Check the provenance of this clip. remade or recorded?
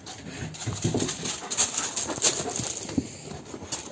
recorded